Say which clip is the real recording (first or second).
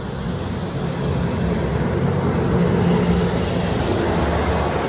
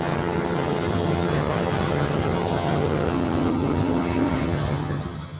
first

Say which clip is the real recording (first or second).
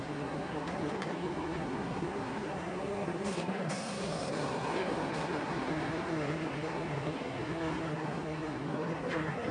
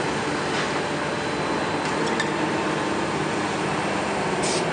second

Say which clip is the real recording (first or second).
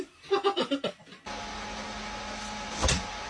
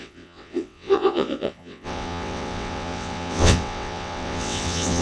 first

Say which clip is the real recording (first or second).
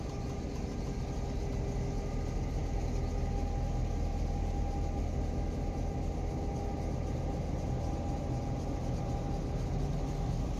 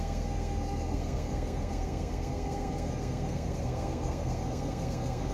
first